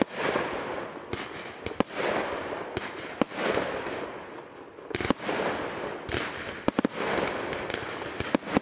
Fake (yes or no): no